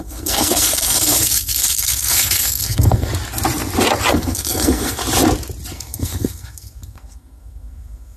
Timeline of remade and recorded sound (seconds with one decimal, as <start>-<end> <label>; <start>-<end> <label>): 0.0-3.1 remade; 3.1-4.1 recorded; 4.1-5.0 remade; 5.0-5.7 recorded; 5.7-8.2 remade